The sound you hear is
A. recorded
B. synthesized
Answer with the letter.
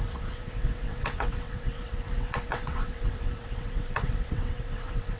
B